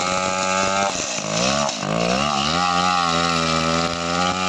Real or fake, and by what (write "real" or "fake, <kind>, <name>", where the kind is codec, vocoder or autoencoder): real